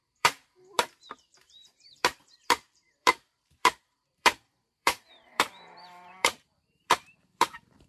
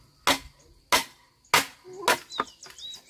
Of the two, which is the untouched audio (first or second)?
second